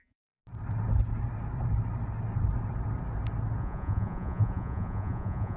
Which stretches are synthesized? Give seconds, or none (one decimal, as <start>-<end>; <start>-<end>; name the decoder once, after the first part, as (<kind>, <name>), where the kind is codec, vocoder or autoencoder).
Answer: 0.0-0.4 (vocoder, Vocos); 3.6-5.6